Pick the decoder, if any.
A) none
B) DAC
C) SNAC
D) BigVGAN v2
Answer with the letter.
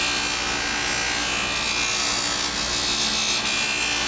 A